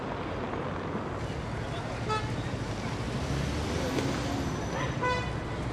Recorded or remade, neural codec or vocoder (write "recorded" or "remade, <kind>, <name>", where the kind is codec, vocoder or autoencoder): recorded